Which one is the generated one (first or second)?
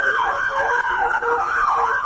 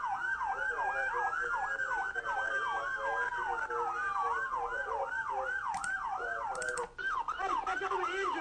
first